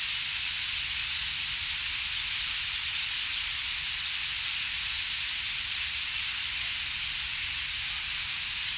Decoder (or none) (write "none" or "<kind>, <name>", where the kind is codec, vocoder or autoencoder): none